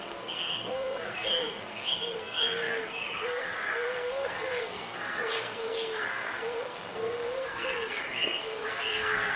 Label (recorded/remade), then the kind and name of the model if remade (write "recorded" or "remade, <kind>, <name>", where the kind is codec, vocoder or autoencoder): remade, codec, SNAC